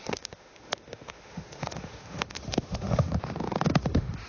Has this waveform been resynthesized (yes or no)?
yes